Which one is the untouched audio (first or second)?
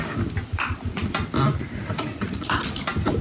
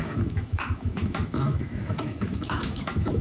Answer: first